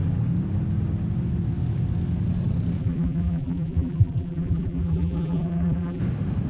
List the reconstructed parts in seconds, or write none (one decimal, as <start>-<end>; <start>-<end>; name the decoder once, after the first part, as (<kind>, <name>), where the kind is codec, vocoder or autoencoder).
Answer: 2.8-6.0 (vocoder, BigVGAN v2)